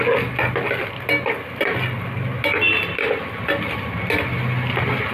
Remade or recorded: recorded